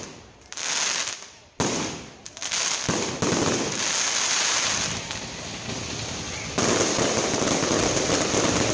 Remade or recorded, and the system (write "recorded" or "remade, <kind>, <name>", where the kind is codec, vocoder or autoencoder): recorded